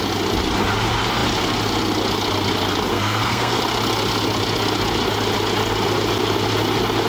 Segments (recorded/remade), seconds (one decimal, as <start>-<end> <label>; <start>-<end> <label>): 0.0-2.9 recorded; 2.9-3.6 remade; 3.6-7.1 recorded